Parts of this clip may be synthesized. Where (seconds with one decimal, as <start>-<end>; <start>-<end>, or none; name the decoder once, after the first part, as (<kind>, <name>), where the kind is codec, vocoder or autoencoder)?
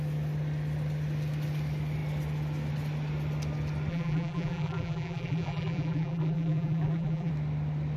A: 3.9-7.3 (vocoder, BigVGAN v2)